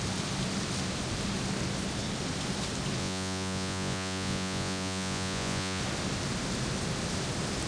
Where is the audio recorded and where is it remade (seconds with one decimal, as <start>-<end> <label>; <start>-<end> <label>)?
0.0-3.0 recorded; 3.0-5.8 remade; 5.8-7.7 recorded